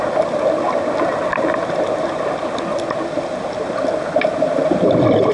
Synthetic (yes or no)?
no